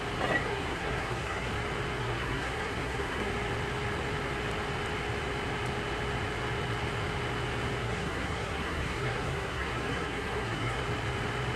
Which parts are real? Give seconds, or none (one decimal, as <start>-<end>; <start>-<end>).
0.0-0.4; 1.5-2.0; 3.3-7.8; 10.8-11.6